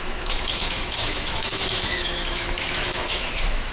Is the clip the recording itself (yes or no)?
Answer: no